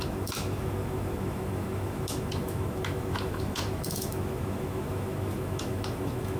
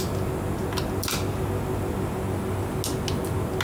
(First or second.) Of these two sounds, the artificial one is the first